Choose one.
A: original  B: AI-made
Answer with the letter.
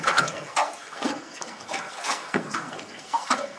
B